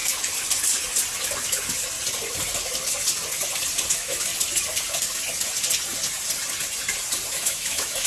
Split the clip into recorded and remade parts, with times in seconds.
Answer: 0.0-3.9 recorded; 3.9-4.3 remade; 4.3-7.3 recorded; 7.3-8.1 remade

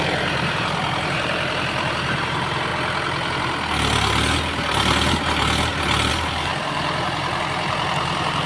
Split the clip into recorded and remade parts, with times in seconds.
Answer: 0.0-2.7 remade; 2.7-6.1 recorded; 6.1-8.5 remade

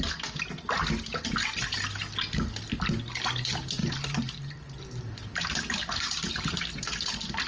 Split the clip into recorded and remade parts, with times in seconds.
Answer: 0.0-3.8 recorded; 3.8-6.3 remade; 6.3-7.5 recorded

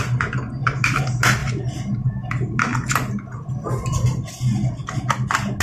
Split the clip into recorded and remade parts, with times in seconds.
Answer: 0.0-5.6 recorded

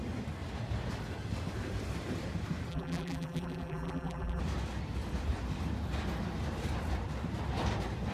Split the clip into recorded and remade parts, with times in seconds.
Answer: 0.0-2.7 recorded; 2.7-4.4 remade; 4.4-8.1 recorded

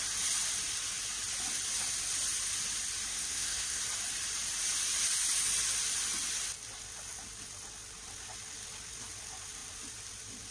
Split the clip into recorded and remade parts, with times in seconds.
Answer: 0.0-3.1 recorded; 3.1-3.8 remade; 3.8-10.5 recorded

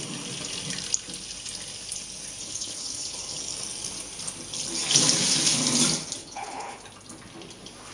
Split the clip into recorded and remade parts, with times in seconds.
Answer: 0.0-2.4 recorded; 2.4-3.4 remade; 3.4-6.2 recorded; 6.2-6.8 remade; 6.8-7.9 recorded

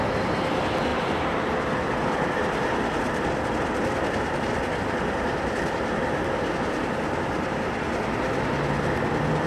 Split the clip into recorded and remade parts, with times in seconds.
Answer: 0.0-9.5 recorded